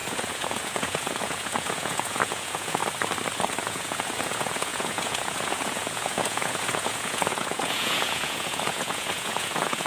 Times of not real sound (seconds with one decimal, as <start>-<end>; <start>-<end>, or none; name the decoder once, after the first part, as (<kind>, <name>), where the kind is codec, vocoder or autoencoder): 0.0-2.8 (vocoder, Vocos); 3.6-9.9